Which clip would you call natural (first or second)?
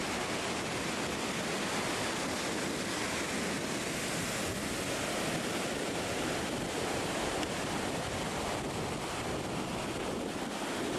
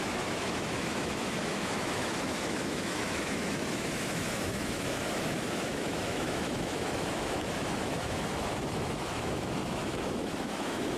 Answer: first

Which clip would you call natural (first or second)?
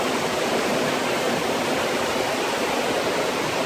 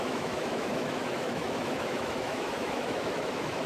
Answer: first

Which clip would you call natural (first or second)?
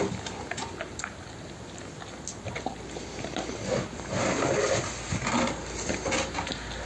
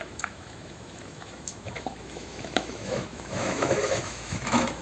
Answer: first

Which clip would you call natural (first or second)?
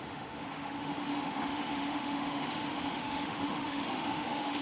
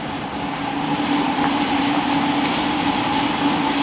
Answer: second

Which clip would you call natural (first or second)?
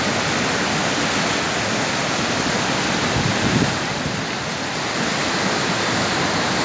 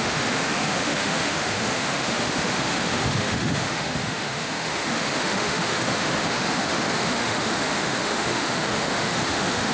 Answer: first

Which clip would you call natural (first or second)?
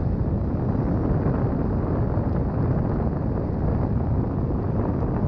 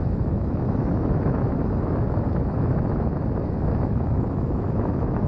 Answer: first